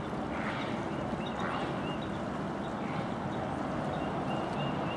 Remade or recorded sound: recorded